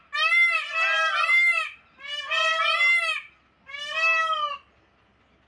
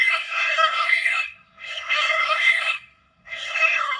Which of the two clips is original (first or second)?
first